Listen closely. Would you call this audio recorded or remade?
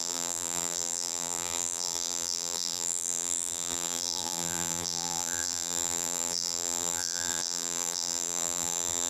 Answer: remade